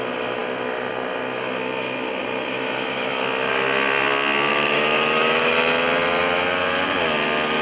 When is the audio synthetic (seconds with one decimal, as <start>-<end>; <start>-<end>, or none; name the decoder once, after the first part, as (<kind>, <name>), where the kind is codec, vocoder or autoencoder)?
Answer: 4.5-5.5 (autoencoder, DAC-VAE)